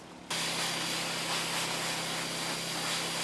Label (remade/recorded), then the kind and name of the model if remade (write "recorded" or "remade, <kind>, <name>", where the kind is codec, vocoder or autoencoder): recorded